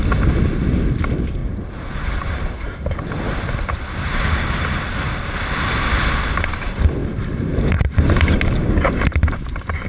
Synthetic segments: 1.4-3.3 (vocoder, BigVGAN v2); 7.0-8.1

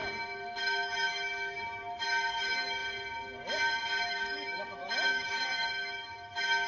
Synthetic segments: 0.6-2.8 (autoencoder, DAC-VAE); 4.0-6.7

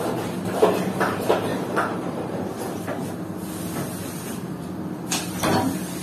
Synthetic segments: 1.5-2.5 (vocoder, BigVGAN v2)

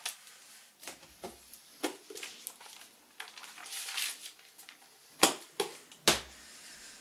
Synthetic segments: none

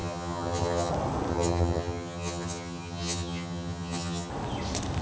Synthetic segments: 0.0-0.9 (vocoder, HiFi-GAN); 1.3-4.3

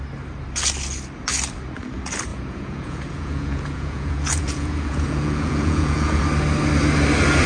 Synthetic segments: 2.3-6.2 (vocoder, Vocos)

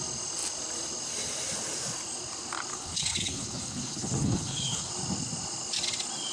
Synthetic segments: 2.7-4.9 (codec, HILCodec)

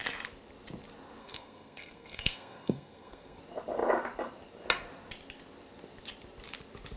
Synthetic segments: 1.2-3.4 (codec, SNAC)